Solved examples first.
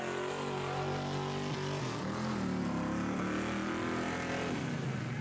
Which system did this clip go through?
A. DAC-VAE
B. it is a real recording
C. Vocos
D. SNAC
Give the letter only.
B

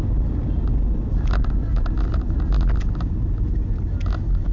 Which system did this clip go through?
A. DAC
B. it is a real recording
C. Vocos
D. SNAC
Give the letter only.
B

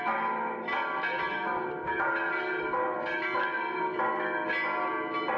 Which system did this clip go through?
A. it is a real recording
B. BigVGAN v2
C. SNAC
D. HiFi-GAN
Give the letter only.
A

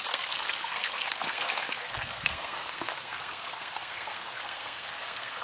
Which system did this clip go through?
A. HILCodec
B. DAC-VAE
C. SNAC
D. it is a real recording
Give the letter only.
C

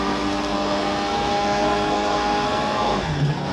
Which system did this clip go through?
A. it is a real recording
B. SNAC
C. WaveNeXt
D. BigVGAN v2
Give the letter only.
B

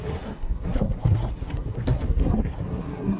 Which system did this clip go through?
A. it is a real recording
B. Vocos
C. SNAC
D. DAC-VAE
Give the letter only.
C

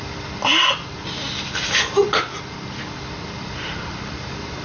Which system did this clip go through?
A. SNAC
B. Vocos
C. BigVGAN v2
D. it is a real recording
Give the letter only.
D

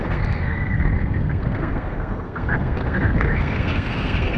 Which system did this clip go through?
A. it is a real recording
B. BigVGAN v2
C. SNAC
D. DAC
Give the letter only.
C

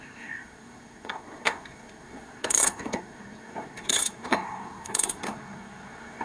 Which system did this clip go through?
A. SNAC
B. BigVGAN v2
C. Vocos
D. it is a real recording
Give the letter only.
A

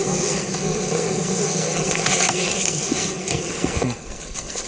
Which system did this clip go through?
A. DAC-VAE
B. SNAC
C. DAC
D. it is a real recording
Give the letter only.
B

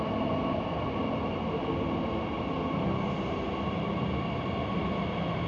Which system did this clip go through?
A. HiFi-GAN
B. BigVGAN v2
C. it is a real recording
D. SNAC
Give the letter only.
C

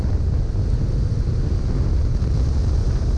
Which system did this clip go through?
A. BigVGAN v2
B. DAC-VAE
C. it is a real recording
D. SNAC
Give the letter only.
C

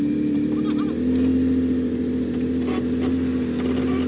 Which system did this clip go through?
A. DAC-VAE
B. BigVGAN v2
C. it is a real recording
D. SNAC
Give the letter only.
C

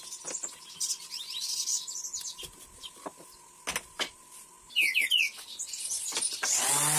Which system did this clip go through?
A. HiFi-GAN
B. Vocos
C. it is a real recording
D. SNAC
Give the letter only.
C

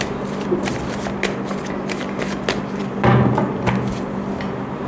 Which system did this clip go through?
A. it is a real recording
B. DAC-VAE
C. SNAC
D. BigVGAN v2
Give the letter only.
A